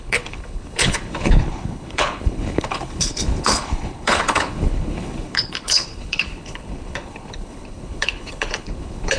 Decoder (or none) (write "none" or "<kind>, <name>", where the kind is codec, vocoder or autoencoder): codec, HILCodec